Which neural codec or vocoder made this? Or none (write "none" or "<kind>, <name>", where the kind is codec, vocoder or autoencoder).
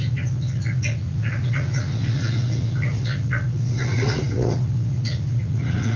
vocoder, Vocos